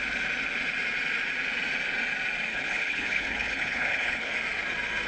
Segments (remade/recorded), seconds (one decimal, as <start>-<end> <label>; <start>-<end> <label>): 0.0-2.5 recorded; 2.5-4.3 remade; 4.3-5.1 recorded